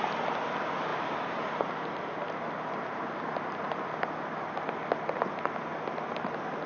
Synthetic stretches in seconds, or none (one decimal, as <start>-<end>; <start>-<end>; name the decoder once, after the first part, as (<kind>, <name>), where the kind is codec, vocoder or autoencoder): 0.9-1.6 (vocoder, BigVGAN v2); 2.2-3.7